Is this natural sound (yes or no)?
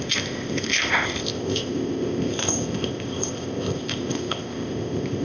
no